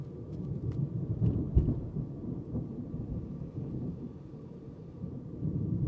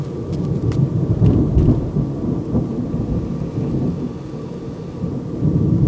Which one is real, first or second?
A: second